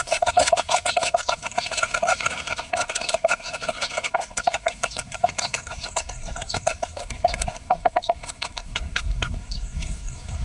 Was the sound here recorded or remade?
remade